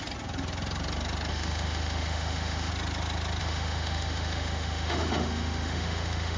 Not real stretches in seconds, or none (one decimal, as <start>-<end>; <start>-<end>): 1.3-2.7; 3.4-6.4